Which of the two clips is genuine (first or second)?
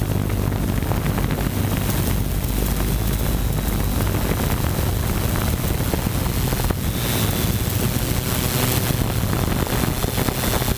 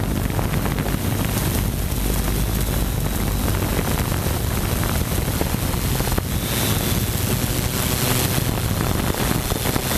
first